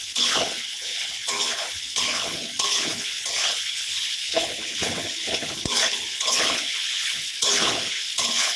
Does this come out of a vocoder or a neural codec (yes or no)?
yes